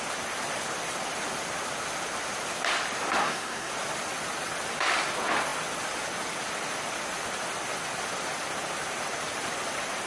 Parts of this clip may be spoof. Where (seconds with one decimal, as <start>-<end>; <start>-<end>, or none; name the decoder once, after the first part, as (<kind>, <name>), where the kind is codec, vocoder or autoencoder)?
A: 3.2-3.7 (codec, SNAC)